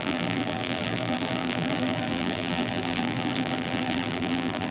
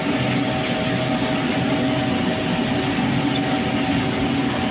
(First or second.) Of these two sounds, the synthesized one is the first